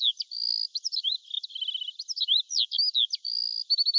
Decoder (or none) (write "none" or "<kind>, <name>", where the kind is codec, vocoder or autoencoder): none